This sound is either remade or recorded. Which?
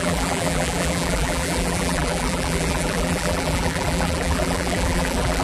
remade